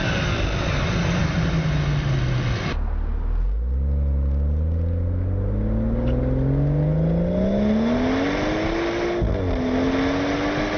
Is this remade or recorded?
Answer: recorded